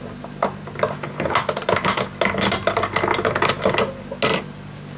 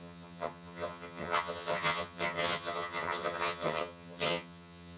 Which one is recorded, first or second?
first